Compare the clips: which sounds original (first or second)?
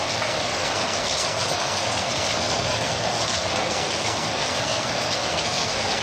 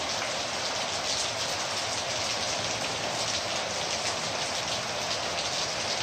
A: second